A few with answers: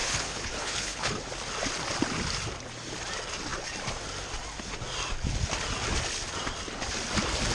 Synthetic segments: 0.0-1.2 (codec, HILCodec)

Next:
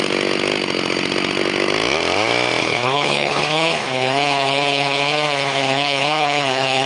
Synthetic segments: 2.6-6.9 (codec, HILCodec)